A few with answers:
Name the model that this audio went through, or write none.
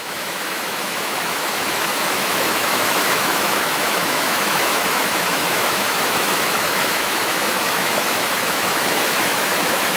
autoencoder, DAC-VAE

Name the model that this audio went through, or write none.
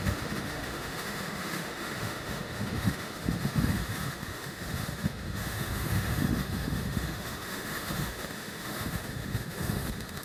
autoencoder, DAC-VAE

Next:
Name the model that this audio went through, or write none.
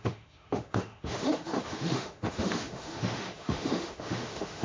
autoencoder, DAC-VAE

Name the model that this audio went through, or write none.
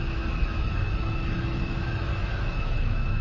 autoencoder, DAC-VAE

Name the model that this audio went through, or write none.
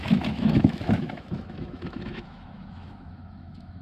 autoencoder, DAC-VAE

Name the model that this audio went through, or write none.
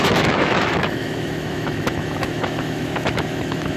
autoencoder, DAC-VAE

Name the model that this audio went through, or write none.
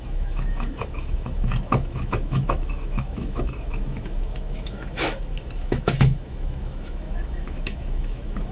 autoencoder, DAC-VAE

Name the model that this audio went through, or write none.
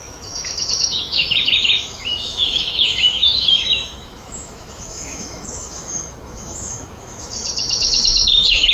autoencoder, DAC-VAE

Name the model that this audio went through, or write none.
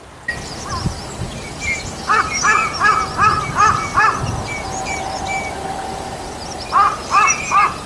none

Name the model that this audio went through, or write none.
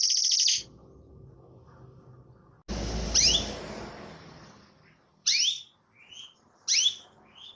none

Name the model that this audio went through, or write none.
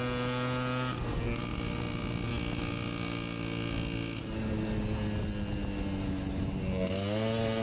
none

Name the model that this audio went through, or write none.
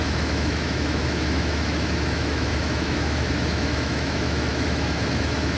autoencoder, DAC-VAE